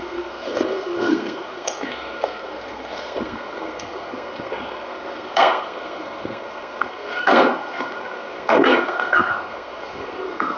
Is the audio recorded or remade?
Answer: remade